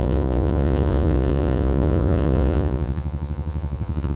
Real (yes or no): no